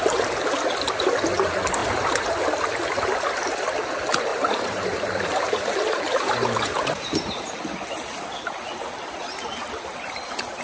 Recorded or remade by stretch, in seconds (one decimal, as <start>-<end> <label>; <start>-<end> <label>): 0.0-1.8 recorded; 1.8-2.4 remade; 2.4-4.3 recorded; 4.3-7.6 remade; 7.6-10.6 recorded